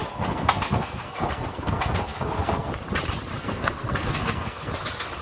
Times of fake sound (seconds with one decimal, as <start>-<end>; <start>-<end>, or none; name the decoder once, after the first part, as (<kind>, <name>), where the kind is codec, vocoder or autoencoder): 0.0-2.7 (codec, SNAC); 3.4-4.7